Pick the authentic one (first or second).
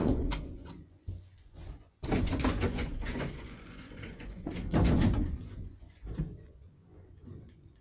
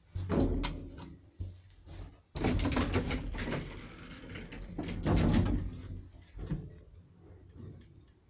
second